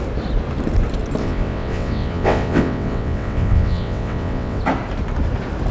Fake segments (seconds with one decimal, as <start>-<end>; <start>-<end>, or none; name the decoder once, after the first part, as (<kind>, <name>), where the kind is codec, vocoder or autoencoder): 1.2-4.6 (vocoder, WaveNeXt)